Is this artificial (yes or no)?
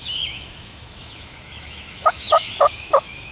yes